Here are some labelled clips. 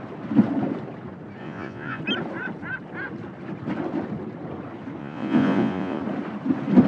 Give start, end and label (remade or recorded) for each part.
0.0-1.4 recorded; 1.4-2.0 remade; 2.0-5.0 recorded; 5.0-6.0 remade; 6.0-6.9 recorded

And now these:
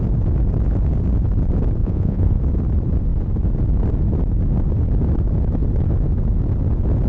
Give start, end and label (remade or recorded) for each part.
0.0-1.8 recorded; 1.8-2.4 remade; 2.4-7.1 recorded

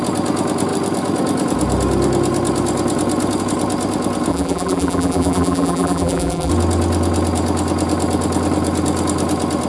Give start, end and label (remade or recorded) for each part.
0.0-4.3 recorded; 4.3-6.5 remade; 6.5-9.7 recorded

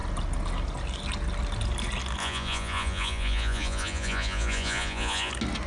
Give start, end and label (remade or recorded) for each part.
0.0-2.2 recorded; 2.2-5.3 remade; 5.3-5.7 recorded